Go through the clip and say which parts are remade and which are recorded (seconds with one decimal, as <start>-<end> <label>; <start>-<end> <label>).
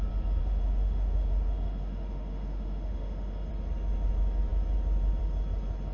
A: 0.0-0.4 recorded; 0.4-3.5 remade; 3.5-5.9 recorded